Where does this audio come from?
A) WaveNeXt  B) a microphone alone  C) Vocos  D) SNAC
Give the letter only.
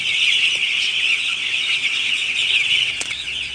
A